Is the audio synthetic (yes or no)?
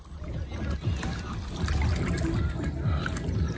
no